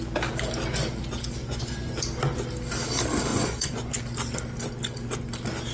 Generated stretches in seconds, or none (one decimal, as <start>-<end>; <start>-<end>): 1.4-1.9; 3.3-3.9